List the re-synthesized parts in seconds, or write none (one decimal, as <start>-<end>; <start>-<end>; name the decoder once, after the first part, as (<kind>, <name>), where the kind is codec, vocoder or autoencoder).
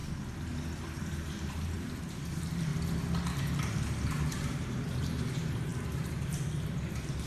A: 1.3-2.7 (vocoder, BigVGAN v2); 4.2-7.3